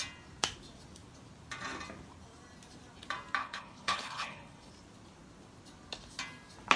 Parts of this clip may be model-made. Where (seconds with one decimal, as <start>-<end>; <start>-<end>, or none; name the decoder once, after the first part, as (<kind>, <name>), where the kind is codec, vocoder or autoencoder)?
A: 3.4-4.7 (codec, HILCodec)